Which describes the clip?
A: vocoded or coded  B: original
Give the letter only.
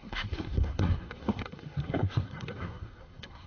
A